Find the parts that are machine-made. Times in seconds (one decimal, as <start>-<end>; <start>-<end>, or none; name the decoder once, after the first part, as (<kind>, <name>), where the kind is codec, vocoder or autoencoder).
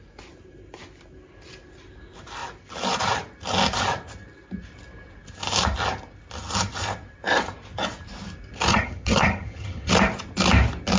8.7-9.9 (vocoder, HiFi-GAN)